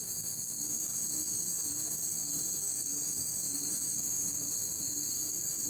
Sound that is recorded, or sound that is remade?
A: remade